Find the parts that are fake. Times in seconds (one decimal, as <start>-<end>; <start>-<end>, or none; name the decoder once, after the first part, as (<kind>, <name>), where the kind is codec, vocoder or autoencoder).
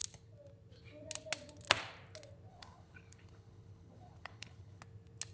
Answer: 2.5-4.8 (codec, HILCodec)